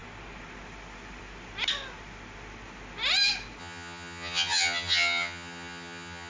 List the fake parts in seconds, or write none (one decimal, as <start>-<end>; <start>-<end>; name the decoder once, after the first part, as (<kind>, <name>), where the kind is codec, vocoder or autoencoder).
3.6-6.3 (vocoder, HiFi-GAN)